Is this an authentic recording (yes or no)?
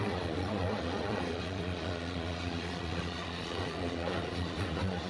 no